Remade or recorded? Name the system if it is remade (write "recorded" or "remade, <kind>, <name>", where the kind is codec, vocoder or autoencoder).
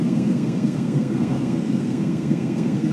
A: remade, codec, SNAC